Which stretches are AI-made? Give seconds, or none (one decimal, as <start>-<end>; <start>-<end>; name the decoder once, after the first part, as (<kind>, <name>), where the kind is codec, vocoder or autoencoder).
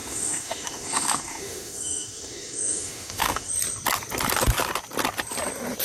0.0-3.5 (autoencoder, DAC-VAE)